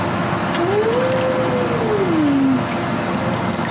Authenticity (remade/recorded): recorded